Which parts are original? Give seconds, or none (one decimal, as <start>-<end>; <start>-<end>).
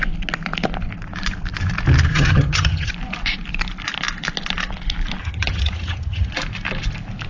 0.0-2.1; 2.9-5.2; 6.3-7.3